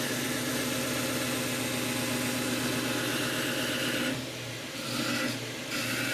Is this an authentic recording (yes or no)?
yes